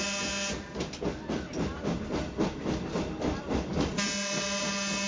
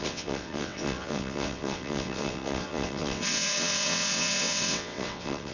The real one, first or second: first